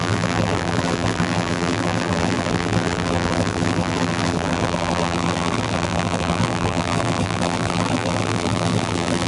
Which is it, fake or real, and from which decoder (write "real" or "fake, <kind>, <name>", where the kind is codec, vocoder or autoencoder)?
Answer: fake, vocoder, BigVGAN v2